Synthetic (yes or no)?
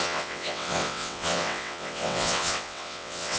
yes